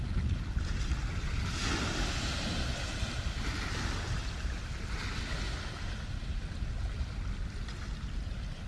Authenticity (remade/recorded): recorded